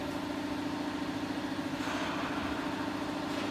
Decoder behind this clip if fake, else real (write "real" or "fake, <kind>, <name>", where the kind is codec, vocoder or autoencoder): real